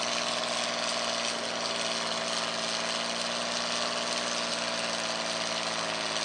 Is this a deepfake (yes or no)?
no